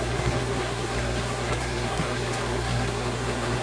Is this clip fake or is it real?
fake